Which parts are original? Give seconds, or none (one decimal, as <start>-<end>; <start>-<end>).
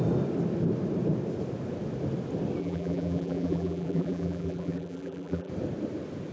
0.0-2.6; 5.5-6.3